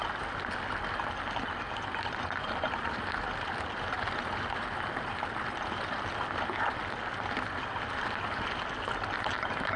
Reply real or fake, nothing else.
real